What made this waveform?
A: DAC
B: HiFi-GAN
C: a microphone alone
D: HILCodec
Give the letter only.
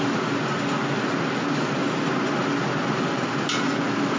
C